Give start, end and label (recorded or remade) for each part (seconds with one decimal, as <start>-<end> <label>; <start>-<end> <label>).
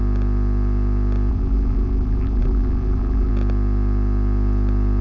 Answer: 0.0-1.3 recorded; 1.3-3.3 remade; 3.3-5.0 recorded